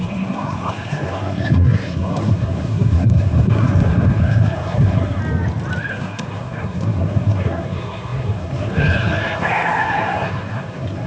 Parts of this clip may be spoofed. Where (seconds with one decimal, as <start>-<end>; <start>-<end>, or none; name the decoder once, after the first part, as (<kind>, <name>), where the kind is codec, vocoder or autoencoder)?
0.0-5.2 (codec, SNAC); 5.9-11.1